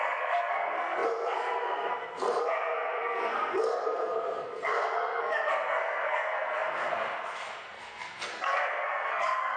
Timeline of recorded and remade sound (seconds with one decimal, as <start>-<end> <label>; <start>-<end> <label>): 0.0-9.6 remade

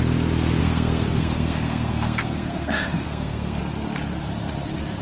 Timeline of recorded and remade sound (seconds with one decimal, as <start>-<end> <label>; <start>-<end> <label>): 0.0-0.6 recorded; 0.6-3.6 remade; 3.6-5.0 recorded

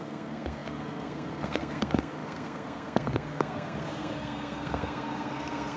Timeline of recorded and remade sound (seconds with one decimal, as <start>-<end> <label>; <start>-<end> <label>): 0.0-5.8 remade

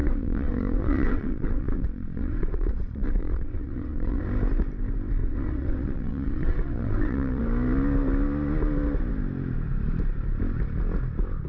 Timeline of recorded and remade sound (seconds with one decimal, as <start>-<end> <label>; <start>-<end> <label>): 0.0-4.2 remade; 4.2-5.2 recorded; 5.2-7.4 remade; 7.4-11.5 recorded

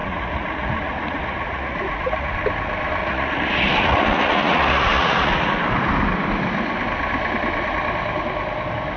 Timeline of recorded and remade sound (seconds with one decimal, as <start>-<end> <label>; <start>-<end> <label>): 0.0-2.3 remade; 2.3-3.0 recorded; 3.0-5.5 remade; 5.5-9.0 recorded